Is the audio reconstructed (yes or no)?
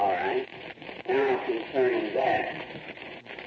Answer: yes